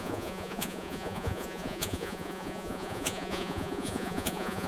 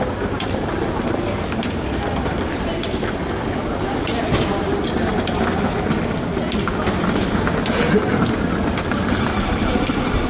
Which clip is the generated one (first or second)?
first